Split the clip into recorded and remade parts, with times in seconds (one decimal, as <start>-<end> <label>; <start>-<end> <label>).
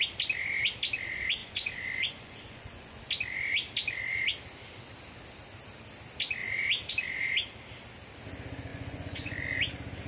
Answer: 0.0-1.4 recorded; 1.4-3.0 remade; 3.0-8.7 recorded; 8.7-9.6 remade; 9.6-10.1 recorded